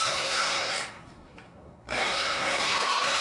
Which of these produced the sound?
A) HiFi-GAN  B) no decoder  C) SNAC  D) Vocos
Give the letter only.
C